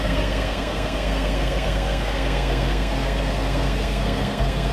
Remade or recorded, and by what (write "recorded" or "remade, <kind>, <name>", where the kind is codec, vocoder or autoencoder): remade, codec, SNAC